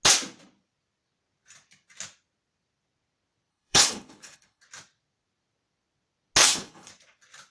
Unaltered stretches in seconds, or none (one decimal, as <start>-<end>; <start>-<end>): 0.0-3.5; 4.6-6.4; 6.9-7.5